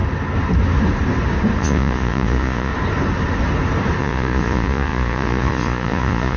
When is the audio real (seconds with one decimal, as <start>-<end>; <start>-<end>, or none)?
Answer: 0.0-1.6; 2.7-4.0